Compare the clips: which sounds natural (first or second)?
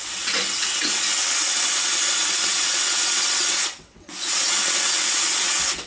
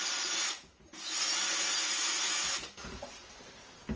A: second